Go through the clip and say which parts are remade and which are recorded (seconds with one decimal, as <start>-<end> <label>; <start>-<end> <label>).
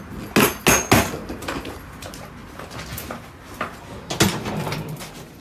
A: 0.0-5.4 recorded